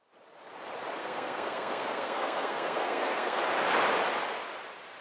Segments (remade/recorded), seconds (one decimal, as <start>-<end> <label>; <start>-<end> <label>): 0.0-1.0 recorded; 1.0-3.4 remade; 3.4-5.0 recorded